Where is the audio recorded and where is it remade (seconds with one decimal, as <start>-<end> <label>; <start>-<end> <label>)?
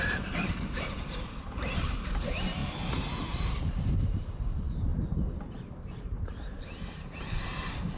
0.0-2.6 remade; 2.6-3.2 recorded; 3.2-4.9 remade; 4.9-5.6 recorded; 5.6-8.0 remade